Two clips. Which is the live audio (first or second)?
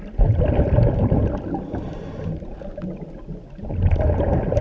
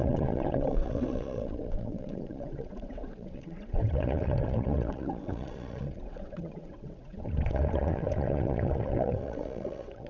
first